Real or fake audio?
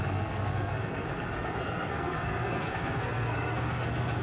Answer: fake